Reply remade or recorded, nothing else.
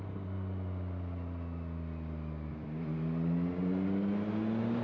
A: recorded